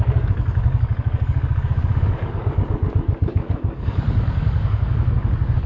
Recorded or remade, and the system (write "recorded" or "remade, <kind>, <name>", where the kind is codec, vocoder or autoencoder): remade, codec, DAC